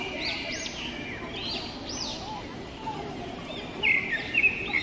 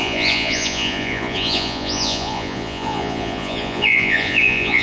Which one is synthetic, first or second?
second